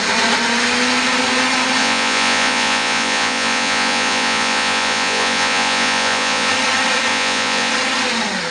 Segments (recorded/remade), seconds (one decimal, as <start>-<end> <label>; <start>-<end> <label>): 0.0-1.8 recorded; 1.8-6.5 remade; 6.5-7.1 recorded; 7.1-7.7 remade; 7.7-8.5 recorded